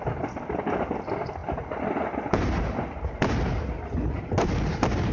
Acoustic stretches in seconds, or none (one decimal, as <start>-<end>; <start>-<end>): 0.0-5.1

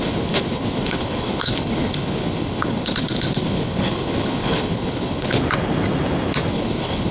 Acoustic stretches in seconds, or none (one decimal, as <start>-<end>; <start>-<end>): 5.4-6.5

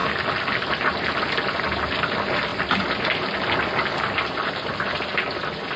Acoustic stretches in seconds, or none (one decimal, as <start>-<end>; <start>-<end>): 0.0-5.8

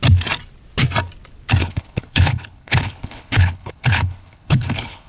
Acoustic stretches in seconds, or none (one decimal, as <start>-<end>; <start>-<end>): 0.0-1.6